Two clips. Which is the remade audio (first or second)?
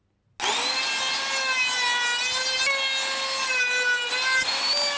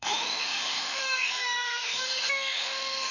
second